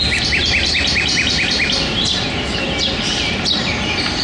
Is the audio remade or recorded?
recorded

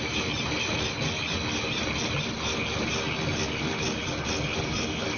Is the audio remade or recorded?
recorded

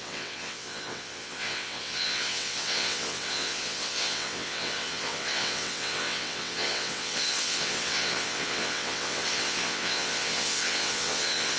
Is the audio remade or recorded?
remade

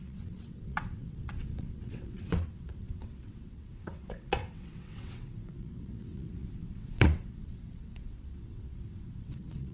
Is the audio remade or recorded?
remade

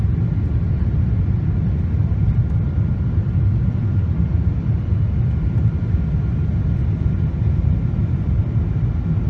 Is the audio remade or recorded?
recorded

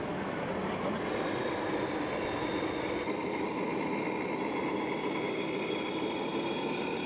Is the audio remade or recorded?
recorded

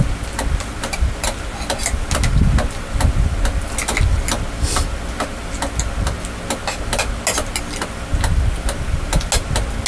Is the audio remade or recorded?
recorded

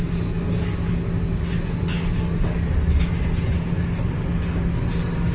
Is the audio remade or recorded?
recorded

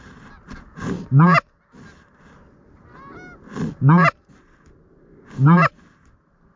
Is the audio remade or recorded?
recorded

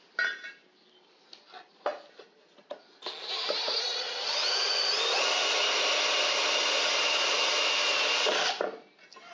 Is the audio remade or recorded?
recorded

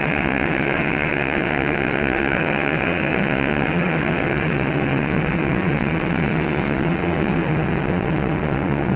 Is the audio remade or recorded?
remade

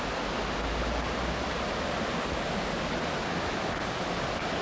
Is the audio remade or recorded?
recorded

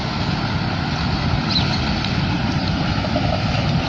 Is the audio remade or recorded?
recorded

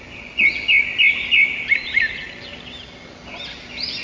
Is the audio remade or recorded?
recorded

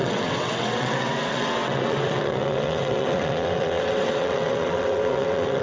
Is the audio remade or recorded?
remade